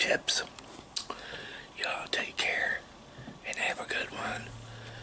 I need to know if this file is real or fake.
real